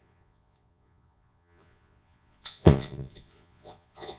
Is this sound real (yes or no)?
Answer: no